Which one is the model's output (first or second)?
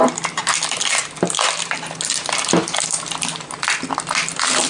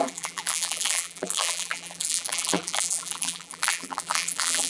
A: second